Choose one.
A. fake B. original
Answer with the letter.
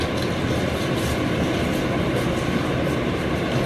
B